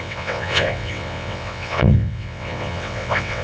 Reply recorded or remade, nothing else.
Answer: remade